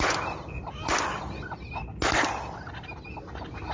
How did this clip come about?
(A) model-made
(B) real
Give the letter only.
B